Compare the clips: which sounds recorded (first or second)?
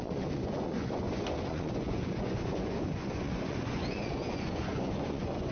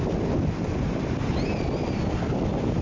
second